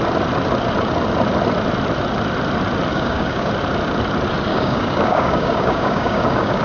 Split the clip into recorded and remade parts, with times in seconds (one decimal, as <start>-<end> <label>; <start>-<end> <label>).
0.0-2.9 recorded; 2.9-3.5 remade; 3.5-4.5 recorded; 4.5-6.6 remade